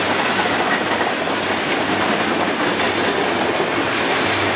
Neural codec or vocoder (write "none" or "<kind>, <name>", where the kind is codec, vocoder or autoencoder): none